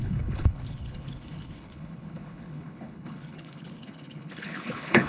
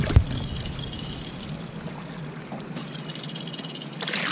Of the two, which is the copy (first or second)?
first